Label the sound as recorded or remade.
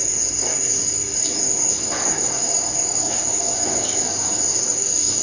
remade